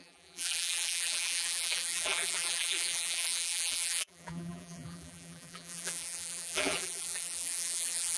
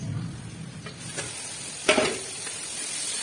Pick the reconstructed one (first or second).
first